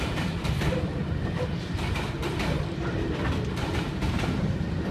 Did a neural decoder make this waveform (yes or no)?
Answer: no